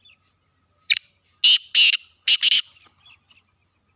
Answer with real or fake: real